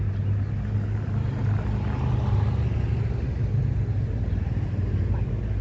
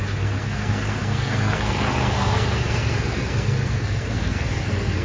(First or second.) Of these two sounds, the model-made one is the second